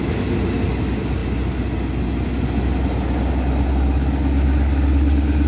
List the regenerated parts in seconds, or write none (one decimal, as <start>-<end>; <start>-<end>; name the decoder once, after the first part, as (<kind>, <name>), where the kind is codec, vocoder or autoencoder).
none